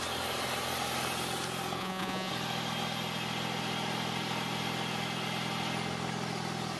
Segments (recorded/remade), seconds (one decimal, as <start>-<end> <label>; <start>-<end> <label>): 0.0-1.8 recorded; 1.8-2.3 remade; 2.3-6.8 recorded